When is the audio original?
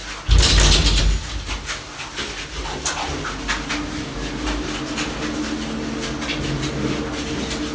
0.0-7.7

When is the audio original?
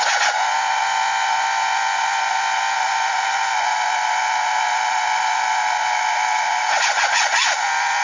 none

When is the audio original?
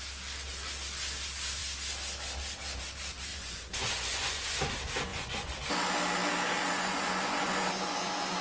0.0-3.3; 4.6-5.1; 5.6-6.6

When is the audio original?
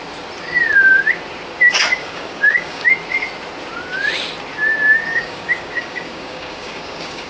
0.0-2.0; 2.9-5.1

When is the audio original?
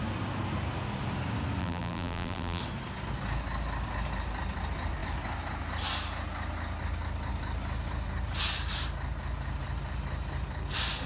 0.0-1.6; 2.6-11.1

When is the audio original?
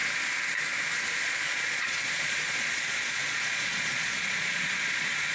0.0-1.2